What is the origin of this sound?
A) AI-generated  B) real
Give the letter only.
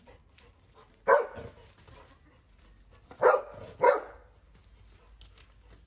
B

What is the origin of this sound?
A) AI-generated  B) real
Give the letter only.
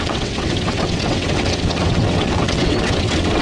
A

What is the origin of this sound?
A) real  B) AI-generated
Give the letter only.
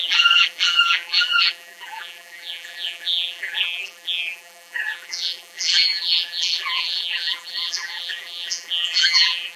B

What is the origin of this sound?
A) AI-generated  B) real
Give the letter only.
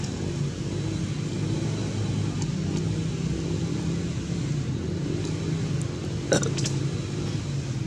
B